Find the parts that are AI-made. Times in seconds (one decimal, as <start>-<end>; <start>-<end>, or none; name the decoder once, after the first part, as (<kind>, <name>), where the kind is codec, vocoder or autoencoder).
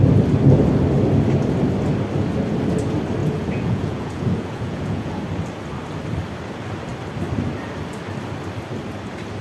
3.2-5.1 (vocoder, Vocos)